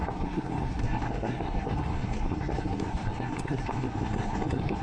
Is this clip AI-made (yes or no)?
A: yes